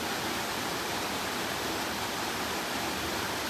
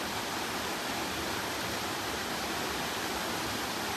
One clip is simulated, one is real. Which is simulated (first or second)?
first